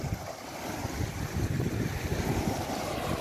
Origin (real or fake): real